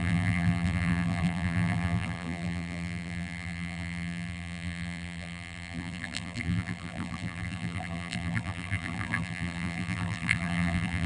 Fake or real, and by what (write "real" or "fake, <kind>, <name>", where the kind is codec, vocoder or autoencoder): fake, vocoder, BigVGAN v2